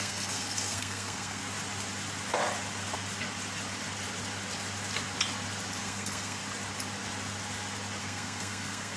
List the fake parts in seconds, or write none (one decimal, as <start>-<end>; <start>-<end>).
0.0-1.4; 5.8-6.4; 8.0-9.0